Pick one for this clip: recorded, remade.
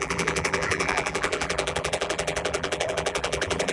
remade